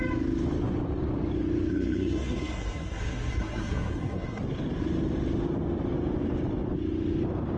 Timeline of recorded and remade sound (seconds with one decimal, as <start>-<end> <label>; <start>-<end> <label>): 0.0-1.7 recorded; 1.7-4.4 remade; 4.4-7.6 recorded